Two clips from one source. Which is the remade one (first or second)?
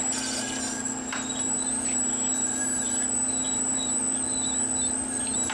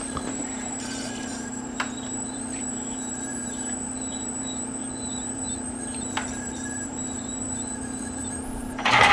second